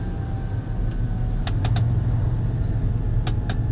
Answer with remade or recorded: recorded